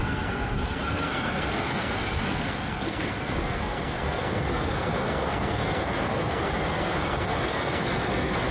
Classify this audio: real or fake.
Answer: fake